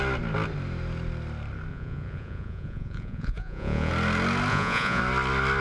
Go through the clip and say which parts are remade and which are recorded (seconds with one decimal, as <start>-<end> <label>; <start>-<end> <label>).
0.0-1.7 recorded; 1.7-3.9 remade; 3.9-4.5 recorded; 4.5-5.0 remade; 5.0-5.6 recorded

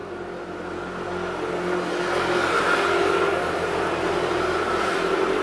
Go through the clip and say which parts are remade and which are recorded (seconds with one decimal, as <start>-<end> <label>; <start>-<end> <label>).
0.0-5.4 recorded